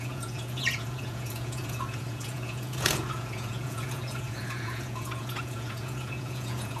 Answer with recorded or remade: remade